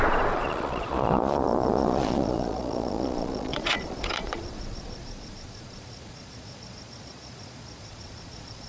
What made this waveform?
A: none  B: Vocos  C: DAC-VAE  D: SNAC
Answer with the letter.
B